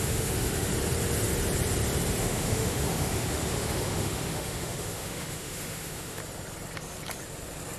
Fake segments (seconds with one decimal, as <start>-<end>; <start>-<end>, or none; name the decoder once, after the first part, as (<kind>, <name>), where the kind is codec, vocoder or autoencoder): 0.0-0.7 (autoencoder, DAC-VAE); 2.2-6.2